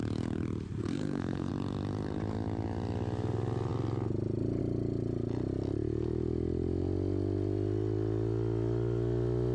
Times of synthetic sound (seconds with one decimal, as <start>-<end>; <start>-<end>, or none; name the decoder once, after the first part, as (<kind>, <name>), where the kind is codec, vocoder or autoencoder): 0.8-1.5 (codec, SNAC)